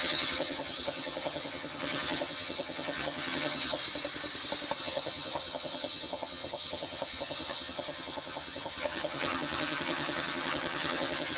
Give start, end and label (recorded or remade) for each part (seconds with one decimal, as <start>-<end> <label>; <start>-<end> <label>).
0.0-3.8 remade; 3.8-4.8 recorded; 4.8-11.4 remade